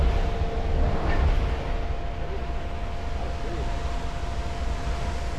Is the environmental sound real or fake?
real